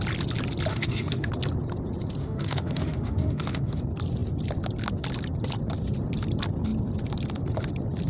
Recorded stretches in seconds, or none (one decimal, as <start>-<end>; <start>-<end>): 0.0-0.7; 1.3-2.2; 3.8-8.1